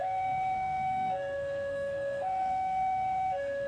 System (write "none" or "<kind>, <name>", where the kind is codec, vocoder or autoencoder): codec, SNAC